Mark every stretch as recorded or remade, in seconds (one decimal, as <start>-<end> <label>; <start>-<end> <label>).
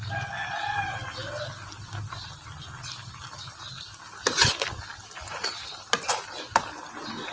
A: 0.0-7.3 recorded